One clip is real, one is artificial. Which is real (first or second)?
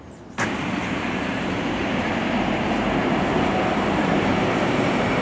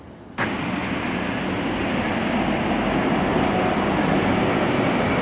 second